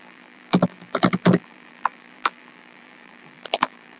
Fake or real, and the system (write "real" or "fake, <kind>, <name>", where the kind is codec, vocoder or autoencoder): fake, vocoder, BigVGAN v2